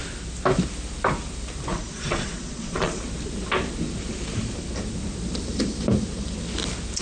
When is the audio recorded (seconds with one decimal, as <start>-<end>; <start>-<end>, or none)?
0.0-1.7; 3.0-7.0